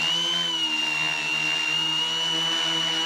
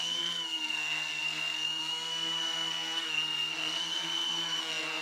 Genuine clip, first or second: first